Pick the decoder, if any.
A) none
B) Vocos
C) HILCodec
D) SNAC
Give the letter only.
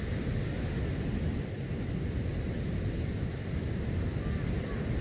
A